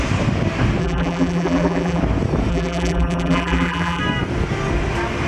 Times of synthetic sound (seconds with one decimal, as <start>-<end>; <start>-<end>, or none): 0.8-2.0; 2.5-4.0